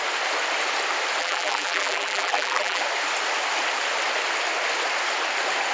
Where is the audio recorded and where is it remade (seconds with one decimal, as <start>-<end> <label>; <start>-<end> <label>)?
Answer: 0.0-1.2 recorded; 1.2-2.8 remade; 2.8-5.7 recorded